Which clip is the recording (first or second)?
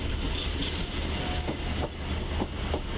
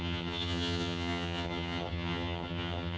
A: first